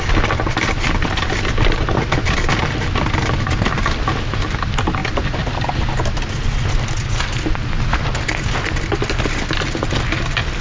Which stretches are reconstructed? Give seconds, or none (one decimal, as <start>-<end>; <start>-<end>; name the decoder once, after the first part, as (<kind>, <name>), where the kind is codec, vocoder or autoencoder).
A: none